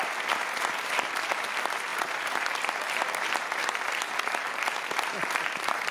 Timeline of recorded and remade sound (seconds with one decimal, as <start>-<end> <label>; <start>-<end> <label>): 0.0-5.9 recorded